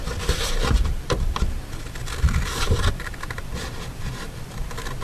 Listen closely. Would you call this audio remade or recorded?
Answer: remade